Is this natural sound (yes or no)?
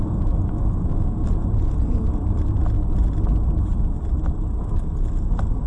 yes